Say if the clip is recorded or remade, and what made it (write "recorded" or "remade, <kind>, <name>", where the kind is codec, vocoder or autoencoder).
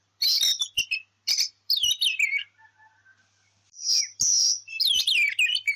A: remade, vocoder, BigVGAN v2